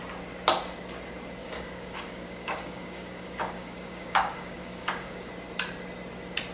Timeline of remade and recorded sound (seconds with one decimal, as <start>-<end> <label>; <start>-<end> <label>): 0.0-1.4 recorded; 1.4-5.3 remade; 5.3-6.5 recorded